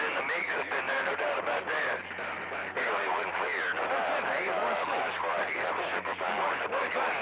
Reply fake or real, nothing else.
fake